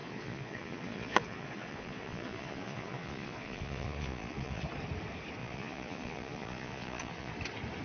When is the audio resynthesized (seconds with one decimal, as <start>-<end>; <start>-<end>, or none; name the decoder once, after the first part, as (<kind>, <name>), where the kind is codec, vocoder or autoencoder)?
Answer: 0.0-4.6 (vocoder, Vocos); 5.4-7.3